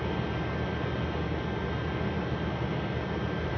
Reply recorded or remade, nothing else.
recorded